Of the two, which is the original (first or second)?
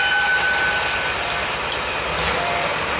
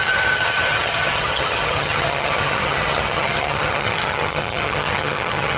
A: first